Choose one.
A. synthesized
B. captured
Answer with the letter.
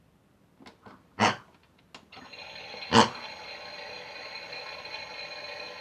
B